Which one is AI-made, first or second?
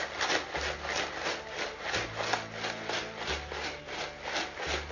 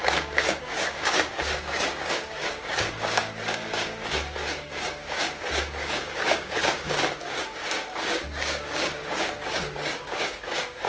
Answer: second